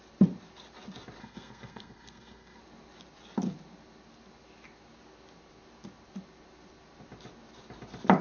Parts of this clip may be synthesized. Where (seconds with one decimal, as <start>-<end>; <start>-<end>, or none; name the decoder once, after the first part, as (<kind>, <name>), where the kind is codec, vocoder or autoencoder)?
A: 1.2-2.6 (codec, SNAC)